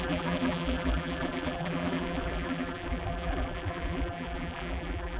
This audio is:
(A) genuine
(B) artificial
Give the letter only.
B